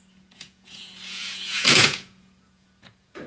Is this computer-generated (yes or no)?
yes